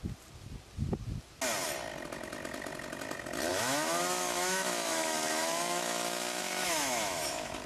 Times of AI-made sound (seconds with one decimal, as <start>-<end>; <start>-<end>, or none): 3.5-7.7